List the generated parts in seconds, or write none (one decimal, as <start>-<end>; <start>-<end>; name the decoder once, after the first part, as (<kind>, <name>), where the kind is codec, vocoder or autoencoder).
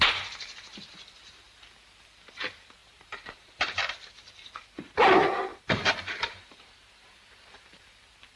2.8-4.1 (vocoder, BigVGAN v2); 5.5-7.8